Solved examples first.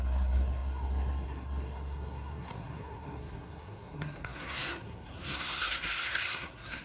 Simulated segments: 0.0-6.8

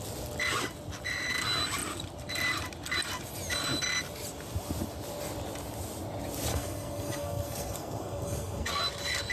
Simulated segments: 6.5-8.8

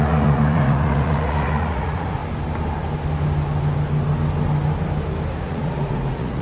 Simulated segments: 0.0-2.2; 5.4-6.4